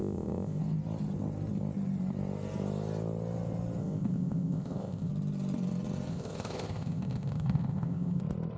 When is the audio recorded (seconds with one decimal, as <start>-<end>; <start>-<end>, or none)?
0.6-3.8; 5.1-6.1; 8.2-8.6